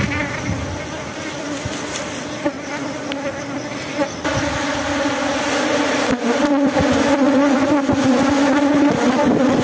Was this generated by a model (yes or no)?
no